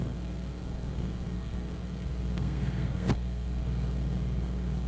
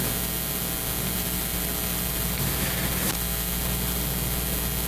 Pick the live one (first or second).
second